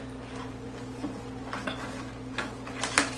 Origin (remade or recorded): recorded